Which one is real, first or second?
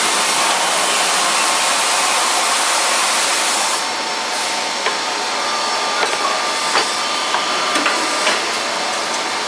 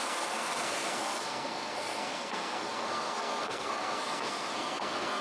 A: first